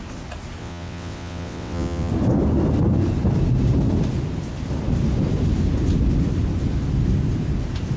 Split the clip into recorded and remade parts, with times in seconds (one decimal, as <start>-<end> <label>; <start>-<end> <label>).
0.0-0.6 recorded; 0.6-2.1 remade; 2.1-8.0 recorded